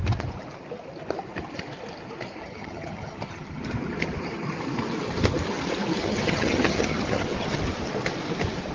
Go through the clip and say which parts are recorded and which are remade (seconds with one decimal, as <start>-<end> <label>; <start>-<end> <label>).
0.0-2.4 recorded; 2.4-3.6 remade; 3.6-6.0 recorded; 6.0-7.6 remade; 7.6-8.7 recorded